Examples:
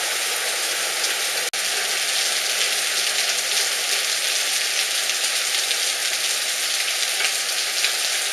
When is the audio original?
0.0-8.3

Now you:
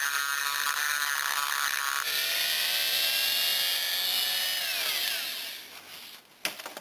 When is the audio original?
0.0-6.8

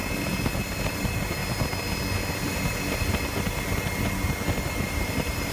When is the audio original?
0.0-0.9; 1.4-4.7

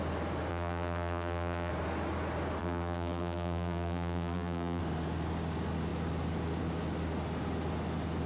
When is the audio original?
0.0-0.5; 1.7-2.6; 4.8-8.3

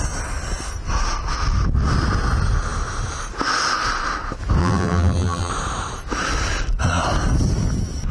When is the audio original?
0.0-4.6; 5.5-8.1